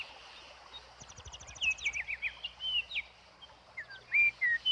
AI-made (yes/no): no